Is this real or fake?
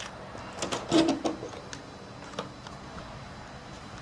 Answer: real